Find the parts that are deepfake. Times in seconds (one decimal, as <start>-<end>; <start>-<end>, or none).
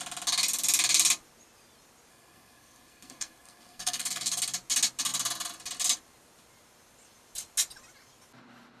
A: 2.1-4.4